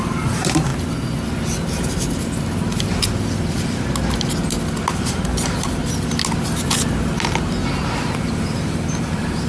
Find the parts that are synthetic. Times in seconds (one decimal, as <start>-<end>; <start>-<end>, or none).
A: 0.0-0.7; 5.0-5.8; 8.2-9.5